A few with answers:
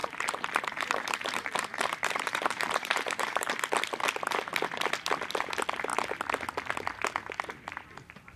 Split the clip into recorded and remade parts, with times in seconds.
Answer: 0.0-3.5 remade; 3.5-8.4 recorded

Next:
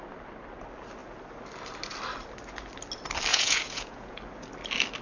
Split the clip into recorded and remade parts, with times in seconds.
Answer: 0.0-3.3 recorded; 3.3-4.2 remade; 4.2-5.0 recorded

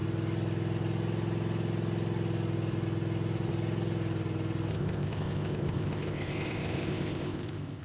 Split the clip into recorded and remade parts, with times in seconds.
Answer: 0.0-4.7 recorded; 4.7-7.8 remade